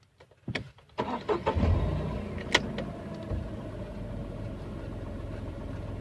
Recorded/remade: recorded